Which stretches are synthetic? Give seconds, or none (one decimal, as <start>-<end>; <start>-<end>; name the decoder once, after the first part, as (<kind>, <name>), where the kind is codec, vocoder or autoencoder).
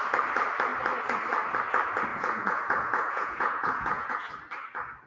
2.1-4.3 (vocoder, Vocos)